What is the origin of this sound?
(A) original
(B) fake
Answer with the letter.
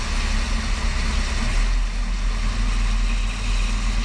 A